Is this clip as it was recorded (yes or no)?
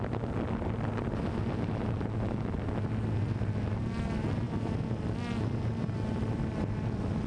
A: yes